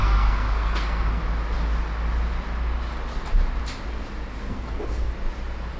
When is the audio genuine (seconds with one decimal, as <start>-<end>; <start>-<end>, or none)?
1.2-4.4; 5.1-5.8